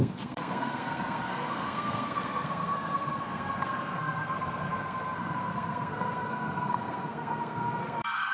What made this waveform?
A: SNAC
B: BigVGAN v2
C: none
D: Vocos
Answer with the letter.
A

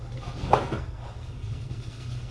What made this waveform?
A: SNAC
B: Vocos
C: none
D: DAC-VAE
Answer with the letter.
A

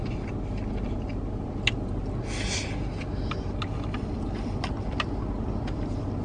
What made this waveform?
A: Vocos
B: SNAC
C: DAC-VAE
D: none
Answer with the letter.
D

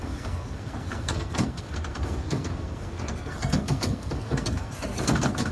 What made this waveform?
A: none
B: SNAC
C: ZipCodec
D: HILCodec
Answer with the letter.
B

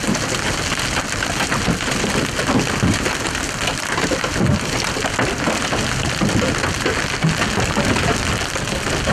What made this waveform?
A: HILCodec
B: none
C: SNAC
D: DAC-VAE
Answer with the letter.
B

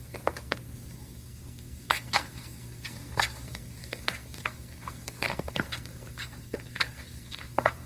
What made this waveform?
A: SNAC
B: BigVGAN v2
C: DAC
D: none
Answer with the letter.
A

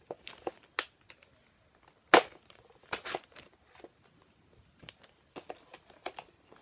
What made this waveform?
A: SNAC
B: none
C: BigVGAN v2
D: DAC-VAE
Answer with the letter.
B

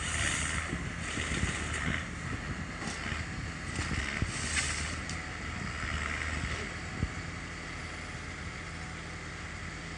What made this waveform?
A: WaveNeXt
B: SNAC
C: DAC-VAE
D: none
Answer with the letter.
D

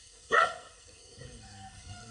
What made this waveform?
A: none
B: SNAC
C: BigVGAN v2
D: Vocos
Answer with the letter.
B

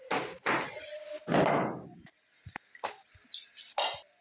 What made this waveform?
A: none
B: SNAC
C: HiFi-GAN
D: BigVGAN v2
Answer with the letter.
A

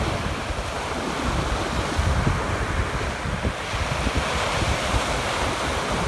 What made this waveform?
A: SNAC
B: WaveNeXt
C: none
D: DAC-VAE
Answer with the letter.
C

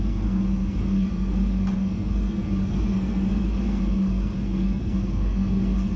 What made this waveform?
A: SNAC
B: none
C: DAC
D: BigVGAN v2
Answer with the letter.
A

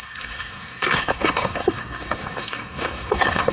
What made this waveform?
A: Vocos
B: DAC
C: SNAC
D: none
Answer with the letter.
C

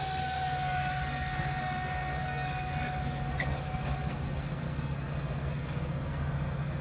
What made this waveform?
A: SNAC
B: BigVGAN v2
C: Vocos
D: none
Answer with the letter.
A